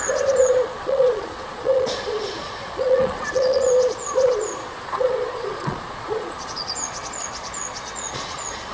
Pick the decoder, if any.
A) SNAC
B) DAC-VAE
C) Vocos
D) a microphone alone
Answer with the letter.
C